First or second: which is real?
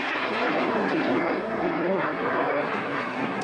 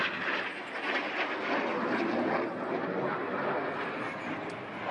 second